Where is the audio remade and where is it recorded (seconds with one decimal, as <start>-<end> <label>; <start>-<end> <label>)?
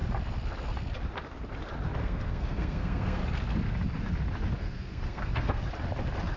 0.0-2.0 recorded; 2.0-3.2 remade; 3.2-4.6 recorded; 4.6-5.6 remade; 5.6-6.4 recorded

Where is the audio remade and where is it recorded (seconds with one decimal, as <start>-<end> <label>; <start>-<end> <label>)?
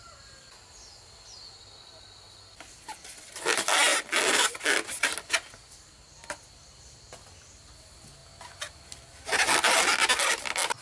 0.0-10.8 recorded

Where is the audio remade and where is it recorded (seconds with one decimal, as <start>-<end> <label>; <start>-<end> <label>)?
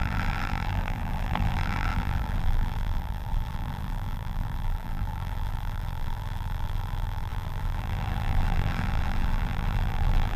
0.0-10.4 remade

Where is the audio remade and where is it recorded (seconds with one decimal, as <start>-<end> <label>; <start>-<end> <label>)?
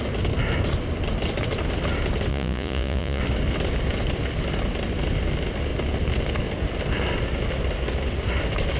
0.0-2.3 recorded; 2.3-3.2 remade; 3.2-8.8 recorded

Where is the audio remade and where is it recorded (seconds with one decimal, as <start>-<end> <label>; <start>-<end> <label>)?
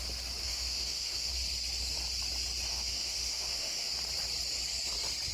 0.0-0.4 recorded; 0.4-1.3 remade; 1.3-2.7 recorded; 2.7-4.0 remade; 4.0-5.3 recorded